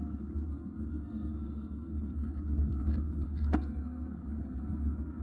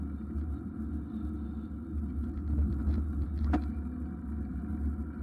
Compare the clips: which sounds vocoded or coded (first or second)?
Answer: first